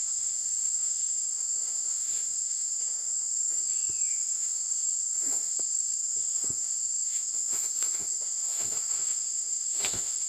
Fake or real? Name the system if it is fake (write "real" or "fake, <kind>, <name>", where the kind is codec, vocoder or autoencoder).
fake, autoencoder, DAC-VAE